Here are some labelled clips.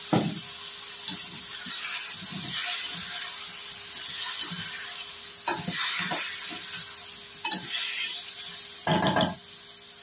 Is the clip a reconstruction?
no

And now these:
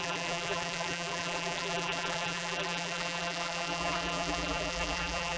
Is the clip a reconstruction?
yes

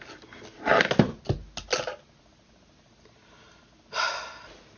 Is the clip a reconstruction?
no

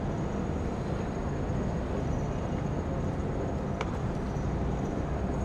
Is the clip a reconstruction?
no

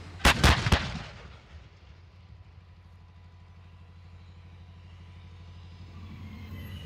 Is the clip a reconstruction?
no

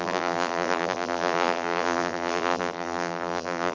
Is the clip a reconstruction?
yes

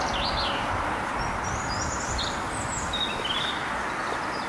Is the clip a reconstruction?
no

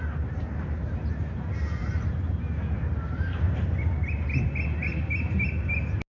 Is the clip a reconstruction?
no